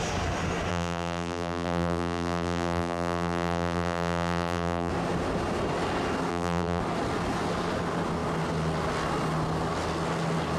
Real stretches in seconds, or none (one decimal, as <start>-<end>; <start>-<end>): 0.0-0.7; 4.9-6.3; 6.8-10.6